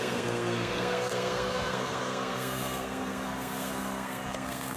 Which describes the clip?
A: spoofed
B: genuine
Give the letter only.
A